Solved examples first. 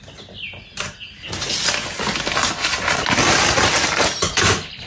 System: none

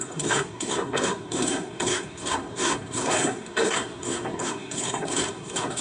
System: codec, SNAC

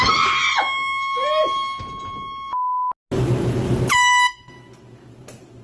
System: none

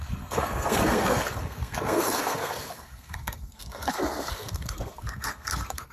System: codec, SNAC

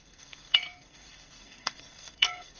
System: codec, SNAC